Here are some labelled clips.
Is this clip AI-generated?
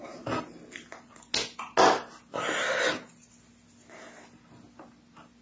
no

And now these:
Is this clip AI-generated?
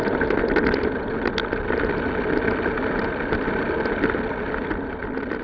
no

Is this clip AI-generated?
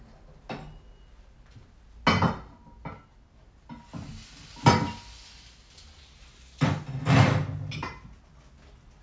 no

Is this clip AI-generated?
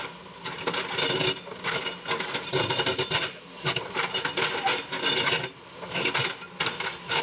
no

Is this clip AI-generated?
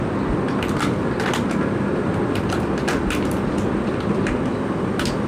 no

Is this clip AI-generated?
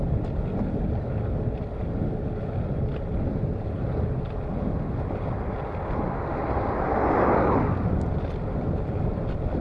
no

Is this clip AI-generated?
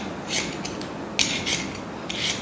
no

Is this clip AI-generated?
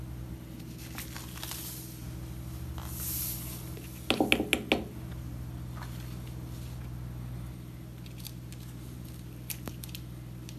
no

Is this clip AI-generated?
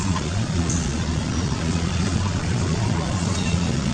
yes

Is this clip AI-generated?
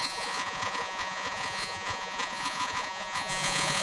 yes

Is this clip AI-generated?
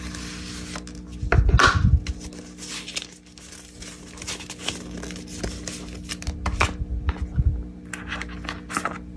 no